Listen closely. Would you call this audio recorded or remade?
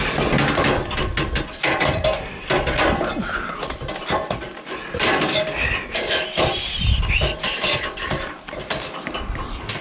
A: recorded